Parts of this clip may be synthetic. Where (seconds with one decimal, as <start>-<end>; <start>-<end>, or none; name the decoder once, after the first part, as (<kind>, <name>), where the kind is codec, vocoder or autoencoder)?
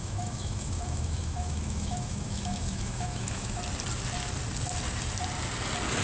0.0-3.6 (autoencoder, DAC-VAE)